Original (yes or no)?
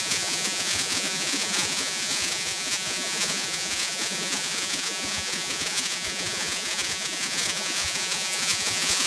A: no